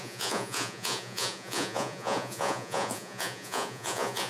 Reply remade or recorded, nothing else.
remade